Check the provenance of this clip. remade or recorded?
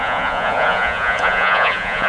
remade